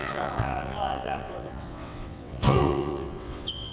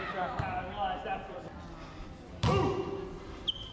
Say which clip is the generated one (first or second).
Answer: first